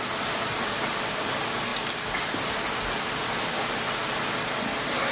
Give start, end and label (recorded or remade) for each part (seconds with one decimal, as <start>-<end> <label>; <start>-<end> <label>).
0.0-5.1 recorded